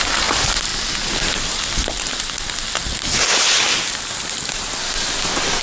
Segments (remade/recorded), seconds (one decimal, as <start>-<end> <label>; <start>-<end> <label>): 0.0-5.6 recorded